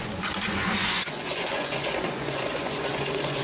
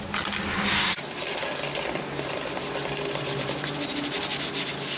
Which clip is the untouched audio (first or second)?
second